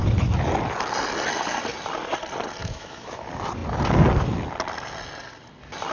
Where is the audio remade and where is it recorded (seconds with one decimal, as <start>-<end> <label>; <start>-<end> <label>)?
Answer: 0.0-2.6 recorded; 2.6-3.2 remade; 3.2-5.9 recorded